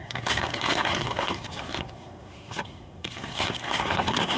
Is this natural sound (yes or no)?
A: no